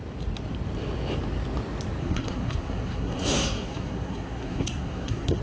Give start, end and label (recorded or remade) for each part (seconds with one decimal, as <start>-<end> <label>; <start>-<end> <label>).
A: 0.0-2.0 recorded; 2.0-5.4 remade